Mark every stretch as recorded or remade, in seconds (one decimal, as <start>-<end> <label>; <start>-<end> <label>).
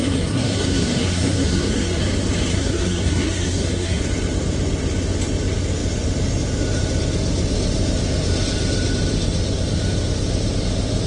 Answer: 0.0-2.0 remade; 2.0-2.5 recorded; 2.5-4.0 remade; 4.0-11.1 recorded